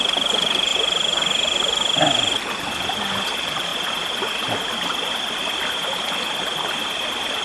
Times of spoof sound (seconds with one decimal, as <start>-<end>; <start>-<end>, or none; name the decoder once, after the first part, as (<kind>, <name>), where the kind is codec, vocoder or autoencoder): none